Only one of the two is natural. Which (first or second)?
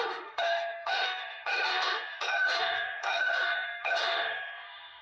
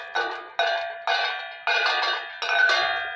second